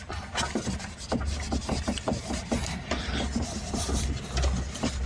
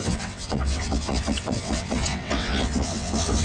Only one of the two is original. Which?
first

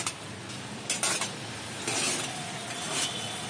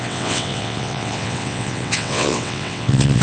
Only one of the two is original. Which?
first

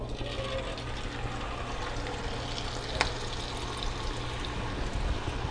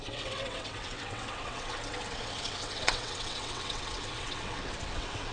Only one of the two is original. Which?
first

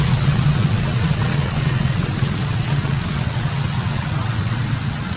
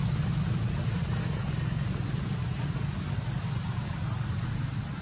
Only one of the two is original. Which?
second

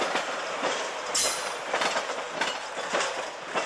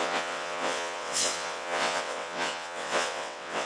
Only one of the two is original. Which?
first